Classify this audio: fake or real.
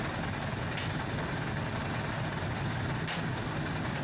real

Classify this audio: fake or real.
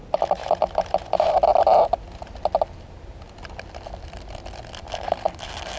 real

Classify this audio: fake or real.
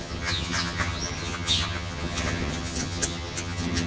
fake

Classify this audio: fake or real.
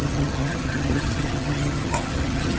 fake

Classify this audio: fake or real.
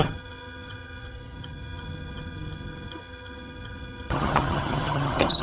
fake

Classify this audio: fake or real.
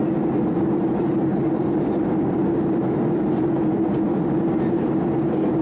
real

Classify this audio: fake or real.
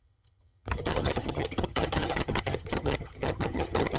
fake